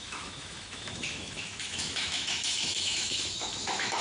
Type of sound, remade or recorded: remade